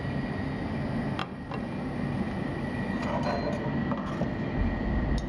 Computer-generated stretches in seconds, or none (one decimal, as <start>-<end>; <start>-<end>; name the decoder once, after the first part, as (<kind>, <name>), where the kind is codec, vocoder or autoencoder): none